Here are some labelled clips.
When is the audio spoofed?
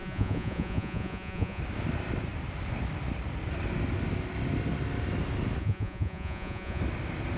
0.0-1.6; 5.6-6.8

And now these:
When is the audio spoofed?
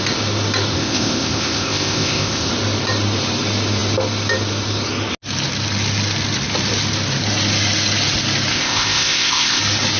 0.7-2.5; 8.5-9.6